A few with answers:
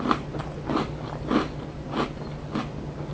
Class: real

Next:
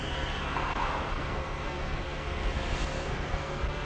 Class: fake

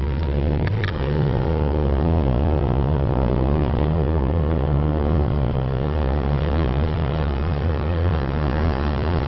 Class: fake